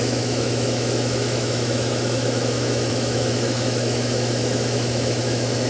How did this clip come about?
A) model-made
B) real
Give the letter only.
A